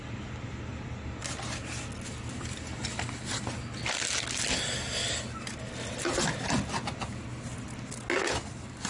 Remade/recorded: recorded